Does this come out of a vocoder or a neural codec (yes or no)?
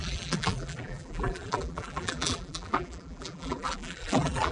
yes